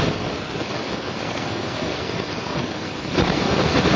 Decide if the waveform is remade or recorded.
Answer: remade